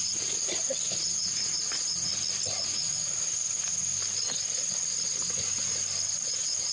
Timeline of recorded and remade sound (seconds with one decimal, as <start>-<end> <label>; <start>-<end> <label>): 0.0-2.1 remade; 2.1-2.6 recorded; 2.6-3.8 remade; 3.8-6.2 recorded; 6.2-6.7 remade

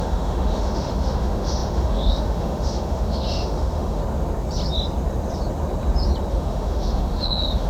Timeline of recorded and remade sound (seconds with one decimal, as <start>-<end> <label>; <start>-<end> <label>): 0.0-4.0 remade; 4.0-6.3 recorded; 6.3-7.7 remade

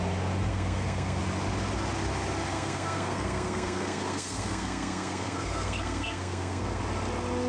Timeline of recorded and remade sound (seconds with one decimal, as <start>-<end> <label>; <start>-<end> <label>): 0.0-0.5 recorded; 0.5-1.2 remade; 1.2-2.5 recorded; 2.5-6.8 remade; 6.8-7.5 recorded